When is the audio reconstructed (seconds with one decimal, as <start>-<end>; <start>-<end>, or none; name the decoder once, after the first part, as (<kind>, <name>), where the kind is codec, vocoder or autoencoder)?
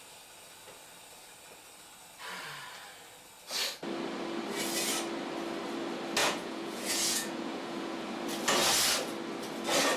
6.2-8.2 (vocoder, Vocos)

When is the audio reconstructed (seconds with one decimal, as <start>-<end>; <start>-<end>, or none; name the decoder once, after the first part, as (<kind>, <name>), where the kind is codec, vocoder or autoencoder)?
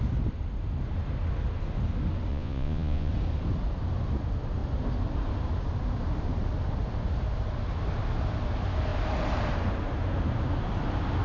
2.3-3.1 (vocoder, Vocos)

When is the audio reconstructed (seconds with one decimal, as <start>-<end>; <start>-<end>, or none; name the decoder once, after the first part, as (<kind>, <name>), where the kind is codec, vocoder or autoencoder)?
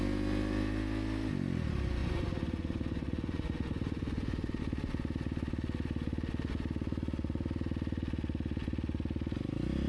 2.0-4.6 (vocoder, Vocos)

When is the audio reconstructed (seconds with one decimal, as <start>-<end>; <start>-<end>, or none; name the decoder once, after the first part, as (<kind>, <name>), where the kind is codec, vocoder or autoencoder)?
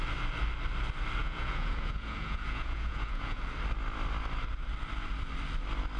1.2-3.4 (vocoder, Vocos)